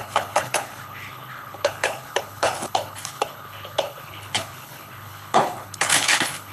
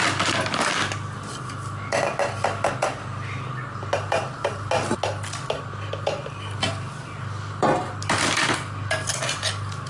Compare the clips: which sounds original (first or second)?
second